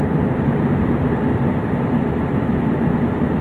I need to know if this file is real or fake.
real